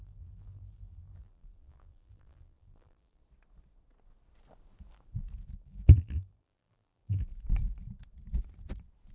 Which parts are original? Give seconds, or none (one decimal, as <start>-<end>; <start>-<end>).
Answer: 3.2-5.6; 7.3-9.1